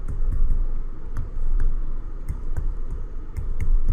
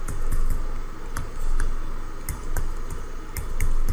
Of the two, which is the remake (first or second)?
first